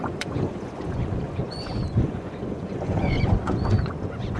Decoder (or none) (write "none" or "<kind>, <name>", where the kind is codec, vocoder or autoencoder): vocoder, Vocos